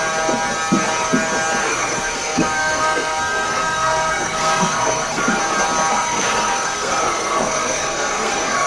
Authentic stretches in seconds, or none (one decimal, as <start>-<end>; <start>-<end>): 0.0-1.6; 5.4-5.9